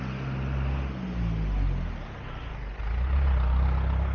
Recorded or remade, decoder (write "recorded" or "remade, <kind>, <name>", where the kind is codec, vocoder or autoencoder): recorded